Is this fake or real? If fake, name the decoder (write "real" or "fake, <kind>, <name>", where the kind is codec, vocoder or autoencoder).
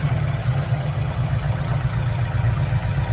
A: fake, vocoder, HiFi-GAN